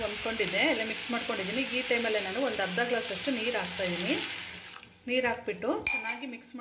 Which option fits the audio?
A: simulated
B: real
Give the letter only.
B